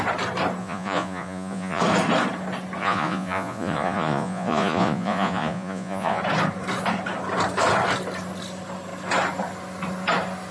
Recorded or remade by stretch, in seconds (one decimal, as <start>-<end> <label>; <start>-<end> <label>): 0.0-0.6 recorded; 0.6-1.8 remade; 1.8-2.8 recorded; 2.8-6.2 remade; 6.2-10.5 recorded